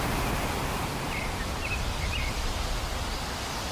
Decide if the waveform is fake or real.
real